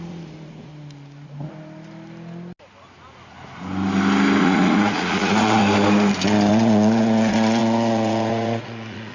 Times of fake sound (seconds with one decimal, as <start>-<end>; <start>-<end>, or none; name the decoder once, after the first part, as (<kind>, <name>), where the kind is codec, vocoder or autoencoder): 0.0-0.7 (vocoder, Vocos); 4.4-5.6; 6.5-9.1